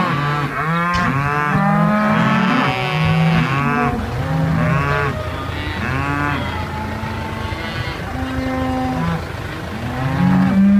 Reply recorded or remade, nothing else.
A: recorded